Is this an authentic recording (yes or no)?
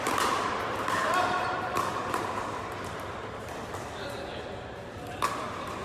no